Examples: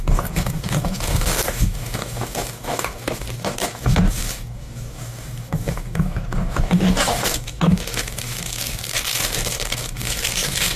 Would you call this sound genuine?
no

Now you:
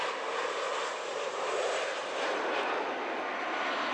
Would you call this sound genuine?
yes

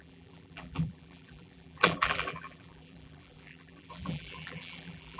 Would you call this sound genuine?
no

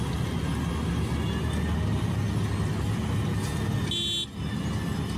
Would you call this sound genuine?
yes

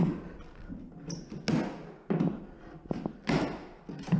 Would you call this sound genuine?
yes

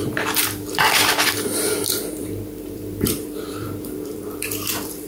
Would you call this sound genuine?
no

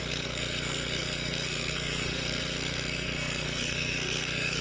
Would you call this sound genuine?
no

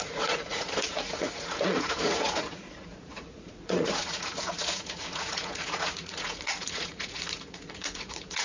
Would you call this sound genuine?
no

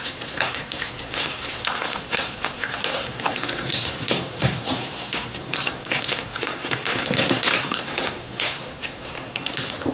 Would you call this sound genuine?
no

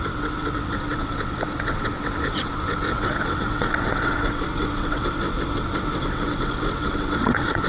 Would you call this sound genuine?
no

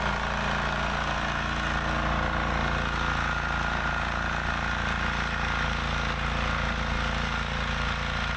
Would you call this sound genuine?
yes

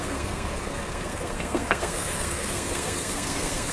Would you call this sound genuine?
no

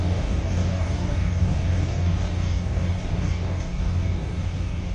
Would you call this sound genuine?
no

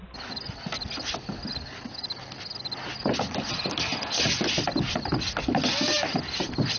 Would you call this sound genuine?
yes